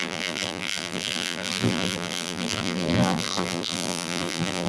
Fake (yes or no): yes